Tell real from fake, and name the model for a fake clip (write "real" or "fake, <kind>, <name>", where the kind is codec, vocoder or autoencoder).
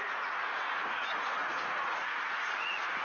fake, vocoder, Vocos